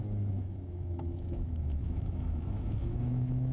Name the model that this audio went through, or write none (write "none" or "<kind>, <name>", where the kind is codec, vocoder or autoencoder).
autoencoder, DAC-VAE